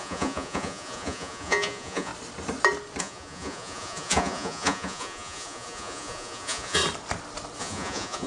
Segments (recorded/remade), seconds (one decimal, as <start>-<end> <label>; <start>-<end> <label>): 0.0-2.1 remade; 2.1-3.0 recorded; 3.0-6.8 remade; 6.8-7.6 recorded; 7.6-8.3 remade